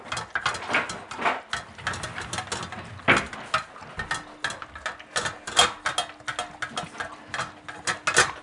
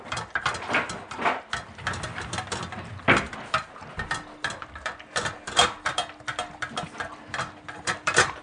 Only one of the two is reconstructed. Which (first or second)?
second